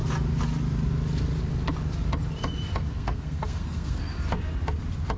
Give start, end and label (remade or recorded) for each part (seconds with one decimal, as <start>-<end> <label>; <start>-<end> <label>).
0.0-2.9 recorded; 2.9-4.0 remade; 4.0-5.2 recorded